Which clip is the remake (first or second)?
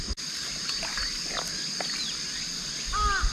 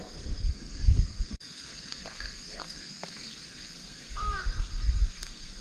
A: second